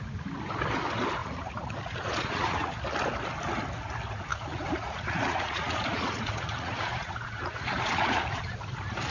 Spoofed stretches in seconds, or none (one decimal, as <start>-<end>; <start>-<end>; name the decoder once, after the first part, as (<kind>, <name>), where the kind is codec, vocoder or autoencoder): 1.2-2.7 (vocoder, Vocos); 4.3-8.6